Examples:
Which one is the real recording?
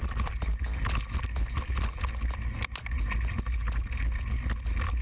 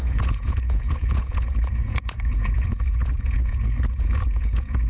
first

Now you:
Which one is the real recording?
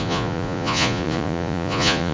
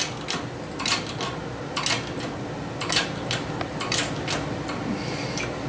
second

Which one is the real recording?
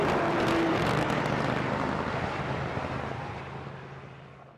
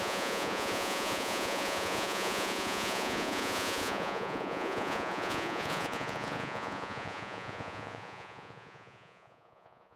first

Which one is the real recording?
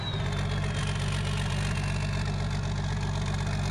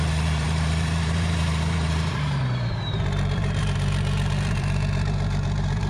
first